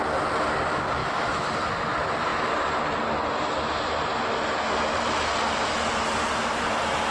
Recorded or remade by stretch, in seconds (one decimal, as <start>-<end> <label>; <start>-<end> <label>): 0.0-1.0 recorded; 1.0-1.7 remade; 1.7-7.1 recorded